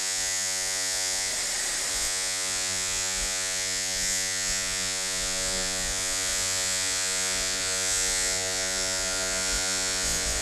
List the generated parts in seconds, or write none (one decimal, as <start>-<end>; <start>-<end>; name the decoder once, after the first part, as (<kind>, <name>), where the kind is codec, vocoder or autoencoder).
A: 0.0-1.3 (vocoder, Vocos); 1.9-10.4